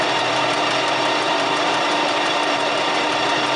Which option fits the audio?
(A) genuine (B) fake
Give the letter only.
B